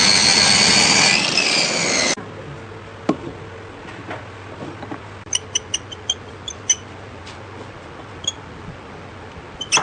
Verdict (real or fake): real